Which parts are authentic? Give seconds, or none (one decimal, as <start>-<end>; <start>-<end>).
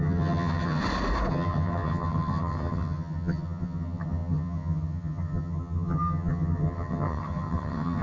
0.8-1.3